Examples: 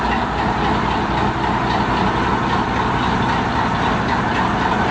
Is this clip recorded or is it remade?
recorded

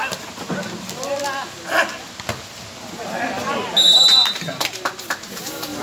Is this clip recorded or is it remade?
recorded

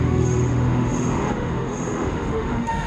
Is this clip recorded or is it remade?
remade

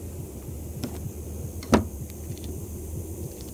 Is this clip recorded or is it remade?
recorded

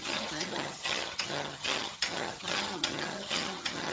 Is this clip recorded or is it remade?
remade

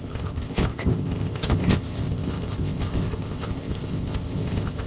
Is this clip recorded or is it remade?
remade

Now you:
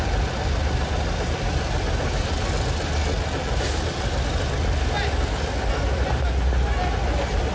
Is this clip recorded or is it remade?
recorded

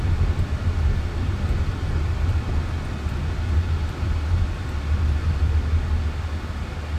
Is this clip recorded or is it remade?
recorded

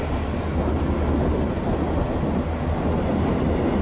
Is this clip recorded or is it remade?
recorded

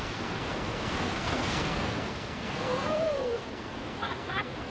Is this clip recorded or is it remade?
remade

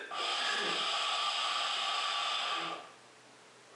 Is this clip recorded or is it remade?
recorded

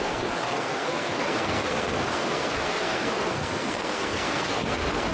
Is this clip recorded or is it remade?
remade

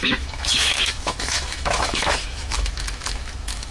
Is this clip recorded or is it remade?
remade